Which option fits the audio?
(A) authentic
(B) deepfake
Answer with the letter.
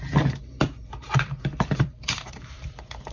B